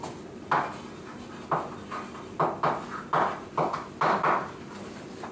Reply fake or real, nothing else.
real